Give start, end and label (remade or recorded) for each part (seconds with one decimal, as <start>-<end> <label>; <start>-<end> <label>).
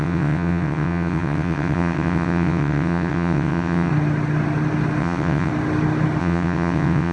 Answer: 0.0-3.9 remade; 3.9-5.0 recorded; 5.0-5.5 remade; 5.5-6.2 recorded; 6.2-7.1 remade